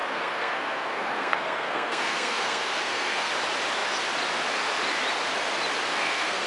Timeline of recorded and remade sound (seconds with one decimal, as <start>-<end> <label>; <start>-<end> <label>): 0.0-3.3 remade; 3.3-5.9 recorded; 5.9-6.5 remade